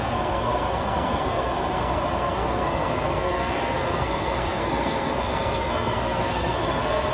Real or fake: fake